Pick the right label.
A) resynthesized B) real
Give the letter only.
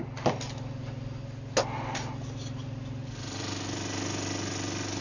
B